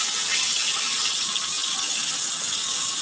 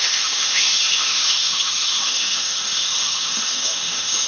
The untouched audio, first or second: first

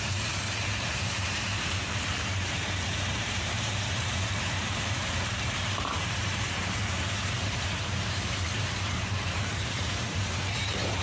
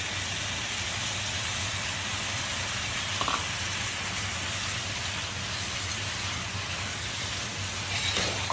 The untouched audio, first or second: second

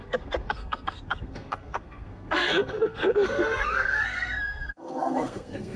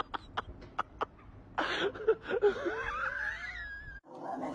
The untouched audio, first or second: second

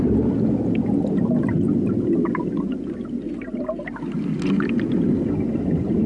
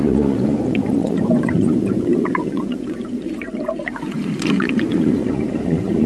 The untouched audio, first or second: first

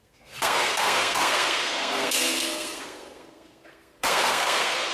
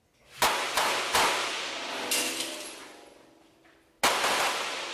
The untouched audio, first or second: second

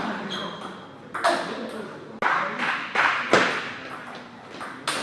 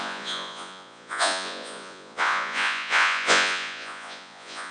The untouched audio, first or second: first